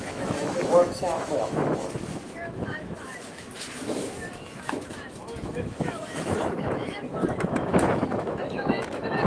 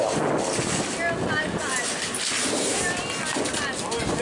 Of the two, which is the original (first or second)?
second